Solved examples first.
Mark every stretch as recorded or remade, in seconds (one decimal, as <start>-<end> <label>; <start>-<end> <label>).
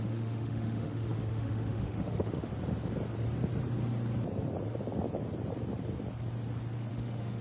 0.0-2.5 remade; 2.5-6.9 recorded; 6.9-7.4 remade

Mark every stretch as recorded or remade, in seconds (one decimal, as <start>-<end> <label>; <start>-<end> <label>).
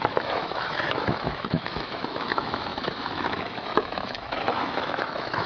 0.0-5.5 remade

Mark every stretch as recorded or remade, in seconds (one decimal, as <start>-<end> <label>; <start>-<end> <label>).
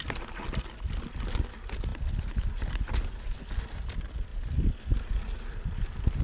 0.0-6.2 recorded